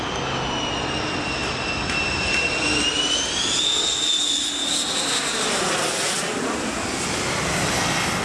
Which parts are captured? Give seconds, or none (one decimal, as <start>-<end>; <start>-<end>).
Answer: 0.0-8.2